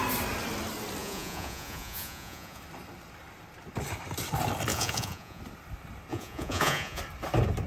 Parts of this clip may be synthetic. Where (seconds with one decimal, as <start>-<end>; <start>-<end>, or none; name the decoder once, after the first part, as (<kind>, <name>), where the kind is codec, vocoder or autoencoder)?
1.0-2.6 (vocoder, Vocos); 4.7-5.4; 6.1-7.0